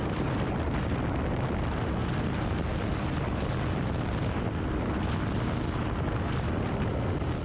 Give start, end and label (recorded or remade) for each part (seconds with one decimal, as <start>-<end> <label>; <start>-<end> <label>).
0.0-7.4 recorded